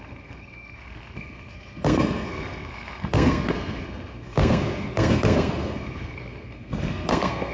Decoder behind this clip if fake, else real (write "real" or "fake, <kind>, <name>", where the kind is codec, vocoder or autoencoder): fake, codec, SNAC